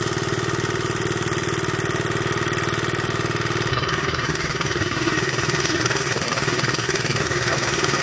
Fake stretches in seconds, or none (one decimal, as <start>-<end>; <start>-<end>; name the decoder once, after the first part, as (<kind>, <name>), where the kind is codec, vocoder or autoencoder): 3.7-8.0 (codec, SNAC)